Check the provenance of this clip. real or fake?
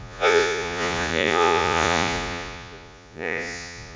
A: fake